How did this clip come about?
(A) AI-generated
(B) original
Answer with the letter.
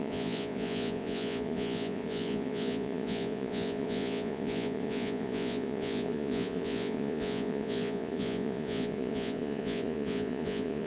A